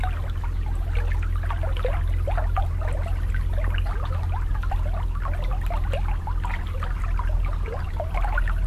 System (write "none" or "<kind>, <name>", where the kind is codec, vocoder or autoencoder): none